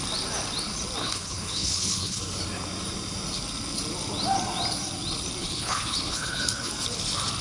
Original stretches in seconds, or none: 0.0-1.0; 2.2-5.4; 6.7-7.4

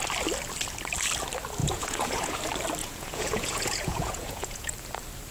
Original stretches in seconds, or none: 0.0-1.6; 2.4-2.8; 4.7-5.3